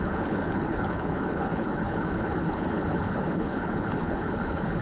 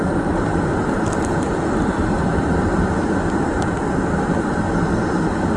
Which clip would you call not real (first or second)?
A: first